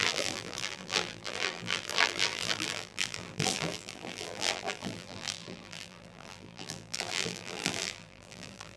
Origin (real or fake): fake